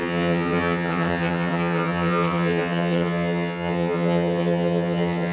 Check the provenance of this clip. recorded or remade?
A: remade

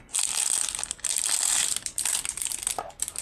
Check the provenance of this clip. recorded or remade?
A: recorded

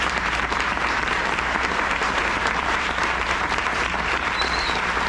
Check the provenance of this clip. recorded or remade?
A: remade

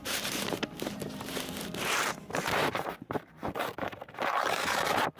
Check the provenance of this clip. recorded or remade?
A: remade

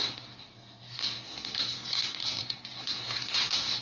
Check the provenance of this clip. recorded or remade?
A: remade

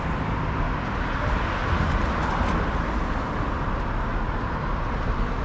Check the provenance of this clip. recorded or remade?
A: recorded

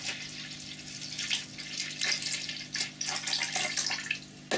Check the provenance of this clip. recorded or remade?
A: recorded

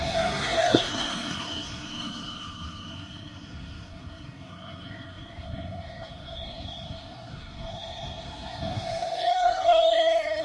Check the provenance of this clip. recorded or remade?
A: remade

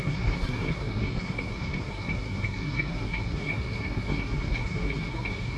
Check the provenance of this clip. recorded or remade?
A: remade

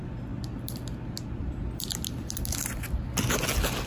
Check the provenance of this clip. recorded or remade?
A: recorded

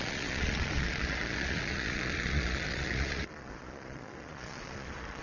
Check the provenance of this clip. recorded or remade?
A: remade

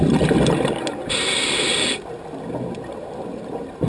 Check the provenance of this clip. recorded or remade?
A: recorded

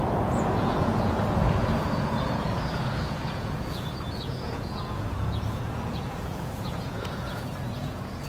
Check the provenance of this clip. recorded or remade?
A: remade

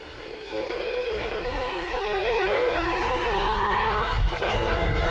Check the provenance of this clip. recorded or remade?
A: remade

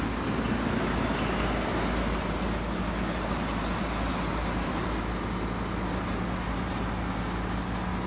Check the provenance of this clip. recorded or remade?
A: recorded